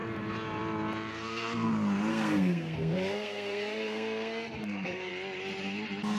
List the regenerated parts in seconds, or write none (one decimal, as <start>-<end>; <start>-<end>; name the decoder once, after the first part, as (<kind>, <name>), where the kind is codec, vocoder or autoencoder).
1.1-1.7 (codec, SNAC); 2.1-5.1